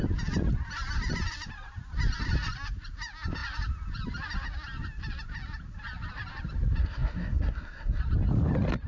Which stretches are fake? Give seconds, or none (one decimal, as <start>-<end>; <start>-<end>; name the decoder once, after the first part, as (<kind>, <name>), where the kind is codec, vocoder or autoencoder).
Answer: 6.8-8.0 (codec, SNAC)